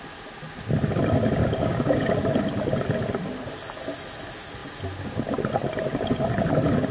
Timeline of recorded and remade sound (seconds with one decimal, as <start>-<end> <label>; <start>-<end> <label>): 0.0-1.4 recorded; 1.4-2.1 remade; 2.1-6.9 recorded